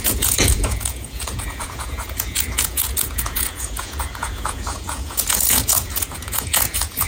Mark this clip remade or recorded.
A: remade